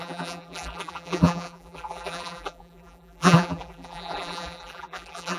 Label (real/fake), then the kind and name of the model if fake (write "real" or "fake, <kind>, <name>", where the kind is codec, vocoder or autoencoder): fake, vocoder, BigVGAN v2